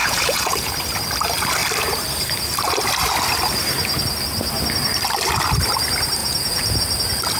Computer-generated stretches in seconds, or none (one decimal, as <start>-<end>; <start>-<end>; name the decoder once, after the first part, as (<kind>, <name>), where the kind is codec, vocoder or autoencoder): 0.0-0.7 (vocoder, Vocos); 6.2-6.8